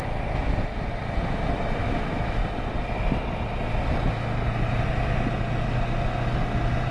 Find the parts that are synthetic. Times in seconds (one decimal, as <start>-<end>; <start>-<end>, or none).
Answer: 1.8-2.4